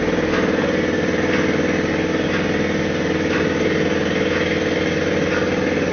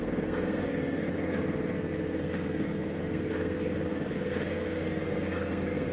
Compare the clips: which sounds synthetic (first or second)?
second